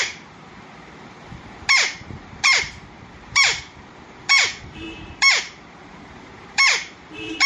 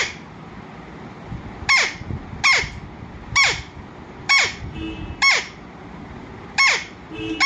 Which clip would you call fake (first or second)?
first